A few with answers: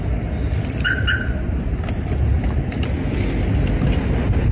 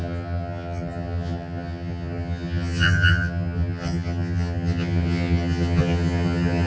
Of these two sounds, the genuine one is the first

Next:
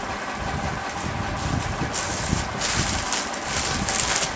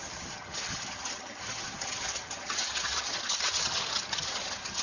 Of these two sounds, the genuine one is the first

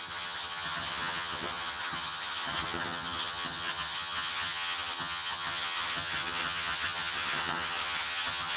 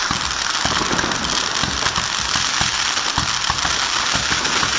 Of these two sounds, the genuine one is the second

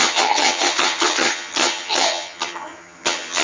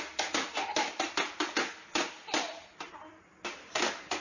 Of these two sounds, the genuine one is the second